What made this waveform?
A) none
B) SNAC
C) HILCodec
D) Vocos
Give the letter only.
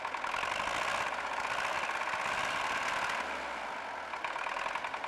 A